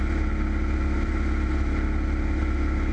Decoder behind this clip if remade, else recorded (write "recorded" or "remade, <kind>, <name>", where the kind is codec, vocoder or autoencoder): recorded